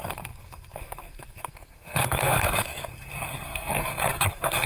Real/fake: fake